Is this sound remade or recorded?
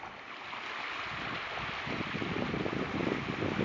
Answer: recorded